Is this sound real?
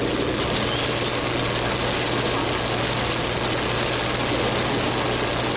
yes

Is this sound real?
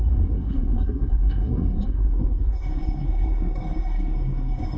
no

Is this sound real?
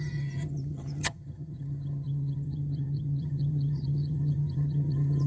no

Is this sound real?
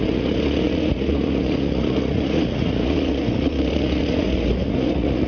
no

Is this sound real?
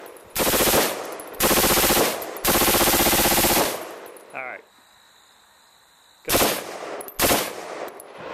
no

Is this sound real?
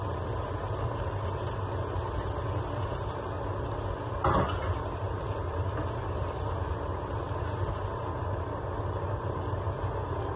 yes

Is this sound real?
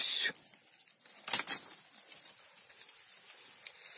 yes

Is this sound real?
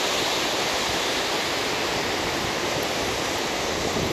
yes